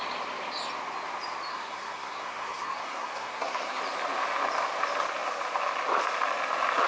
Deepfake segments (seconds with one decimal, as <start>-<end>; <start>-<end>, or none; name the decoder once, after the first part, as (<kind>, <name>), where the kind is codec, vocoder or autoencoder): 1.5-3.8 (codec, SNAC)

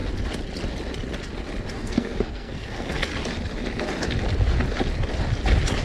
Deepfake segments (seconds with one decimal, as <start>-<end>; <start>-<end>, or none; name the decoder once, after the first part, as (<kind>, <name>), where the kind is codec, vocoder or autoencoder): 1.7-3.1 (codec, SNAC)

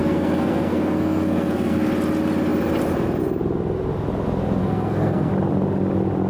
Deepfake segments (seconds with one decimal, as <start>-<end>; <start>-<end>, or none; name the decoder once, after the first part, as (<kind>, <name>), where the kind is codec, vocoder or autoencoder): 0.0-1.9 (codec, SNAC); 4.6-5.3